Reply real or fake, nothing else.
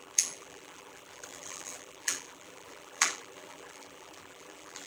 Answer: fake